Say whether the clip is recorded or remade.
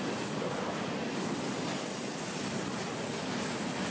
recorded